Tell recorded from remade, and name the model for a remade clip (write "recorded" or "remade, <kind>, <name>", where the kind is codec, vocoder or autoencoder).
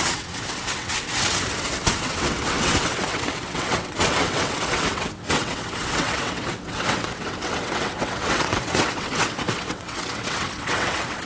remade, vocoder, WaveNeXt